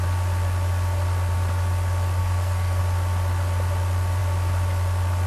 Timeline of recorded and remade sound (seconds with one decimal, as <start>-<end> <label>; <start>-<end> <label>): 0.0-2.2 recorded; 2.2-2.8 remade; 2.8-5.3 recorded